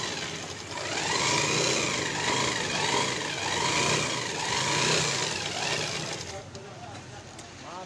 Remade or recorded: recorded